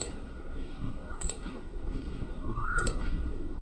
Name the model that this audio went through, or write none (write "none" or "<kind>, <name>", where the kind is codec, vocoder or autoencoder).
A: codec, SNAC